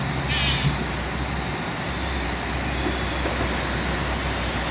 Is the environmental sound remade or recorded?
recorded